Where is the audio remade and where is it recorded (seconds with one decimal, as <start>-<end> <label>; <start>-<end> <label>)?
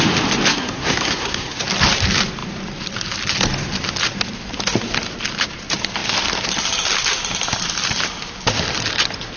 0.0-0.5 recorded; 0.5-1.6 remade; 1.6-9.4 recorded